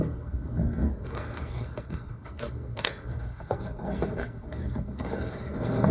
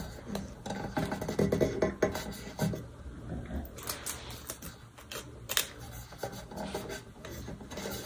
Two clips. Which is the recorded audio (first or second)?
second